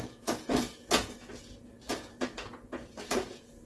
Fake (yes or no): yes